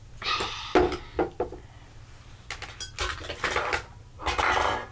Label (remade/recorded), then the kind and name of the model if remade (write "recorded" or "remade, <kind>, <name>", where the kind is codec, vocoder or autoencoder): recorded